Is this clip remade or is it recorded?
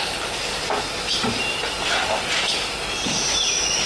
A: recorded